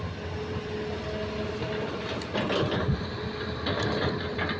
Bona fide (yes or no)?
yes